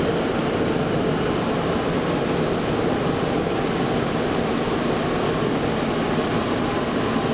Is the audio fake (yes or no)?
no